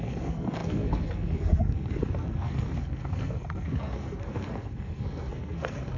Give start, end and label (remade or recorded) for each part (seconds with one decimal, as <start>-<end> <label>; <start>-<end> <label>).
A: 0.0-6.0 remade